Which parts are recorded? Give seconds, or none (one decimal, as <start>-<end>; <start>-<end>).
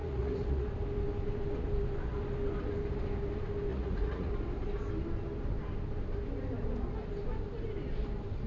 0.7-3.7; 4.3-8.5